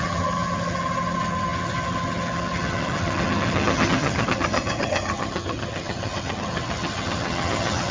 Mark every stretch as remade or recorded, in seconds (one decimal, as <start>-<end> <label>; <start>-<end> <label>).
0.0-7.9 remade